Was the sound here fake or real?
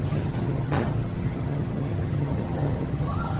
fake